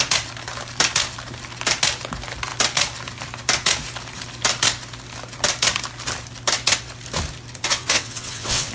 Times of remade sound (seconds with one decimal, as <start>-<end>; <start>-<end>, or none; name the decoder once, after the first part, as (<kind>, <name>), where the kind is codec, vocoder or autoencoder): 7.7-8.7 (vocoder, WaveNeXt)